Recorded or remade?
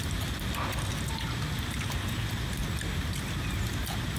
recorded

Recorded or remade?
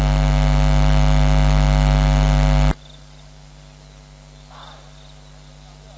recorded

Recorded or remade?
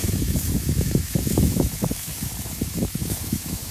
remade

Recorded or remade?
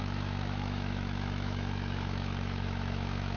remade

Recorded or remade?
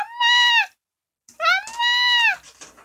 recorded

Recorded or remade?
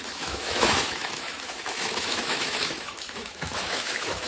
remade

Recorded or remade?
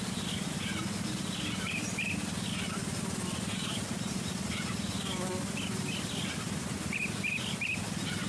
recorded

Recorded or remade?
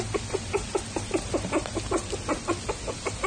recorded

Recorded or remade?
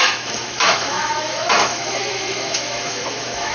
remade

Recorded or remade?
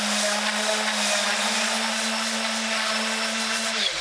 recorded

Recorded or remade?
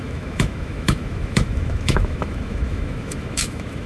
remade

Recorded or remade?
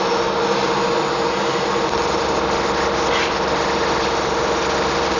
recorded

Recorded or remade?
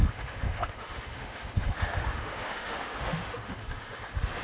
remade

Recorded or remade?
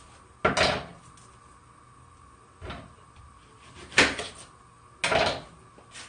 recorded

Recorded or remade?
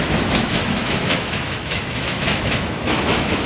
remade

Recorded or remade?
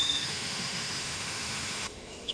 remade